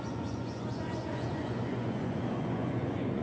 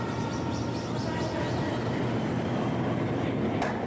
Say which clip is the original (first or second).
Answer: second